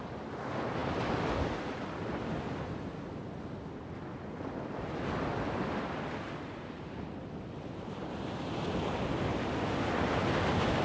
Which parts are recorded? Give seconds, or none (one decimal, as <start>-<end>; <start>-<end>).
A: 0.0-10.8